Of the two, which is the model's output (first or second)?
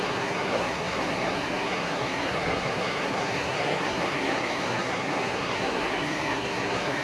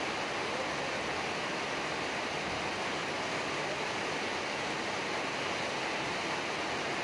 first